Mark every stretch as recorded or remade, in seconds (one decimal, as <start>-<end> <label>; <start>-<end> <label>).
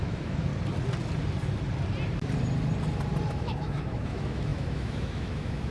0.0-0.5 remade; 0.5-3.3 recorded; 3.3-5.7 remade